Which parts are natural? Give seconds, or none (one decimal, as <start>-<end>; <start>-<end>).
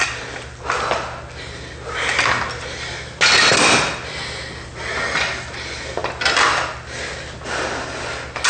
0.0-8.5